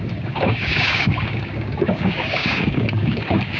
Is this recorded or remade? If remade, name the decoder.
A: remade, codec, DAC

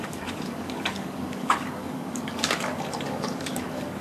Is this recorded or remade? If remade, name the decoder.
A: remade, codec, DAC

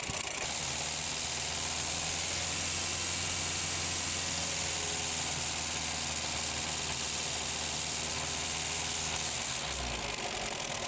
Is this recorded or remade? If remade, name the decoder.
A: recorded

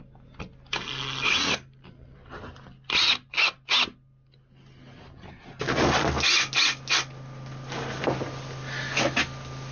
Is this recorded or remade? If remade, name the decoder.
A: recorded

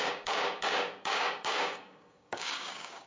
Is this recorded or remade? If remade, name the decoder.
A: remade, codec, DAC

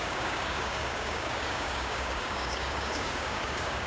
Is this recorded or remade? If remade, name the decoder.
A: remade, codec, DAC